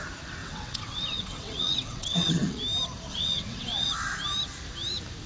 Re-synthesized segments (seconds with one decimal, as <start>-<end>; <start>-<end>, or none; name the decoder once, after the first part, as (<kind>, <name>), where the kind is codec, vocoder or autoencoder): 0.4-2.6 (vocoder, WaveNeXt); 3.1-3.9